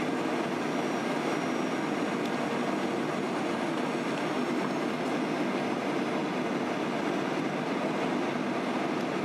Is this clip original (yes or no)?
yes